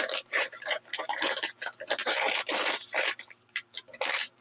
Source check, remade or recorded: remade